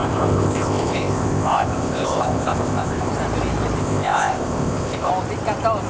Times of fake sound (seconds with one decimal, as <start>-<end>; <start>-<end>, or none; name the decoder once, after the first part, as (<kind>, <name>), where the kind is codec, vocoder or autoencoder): 0.0-3.1 (codec, ZipCodec); 3.8-5.1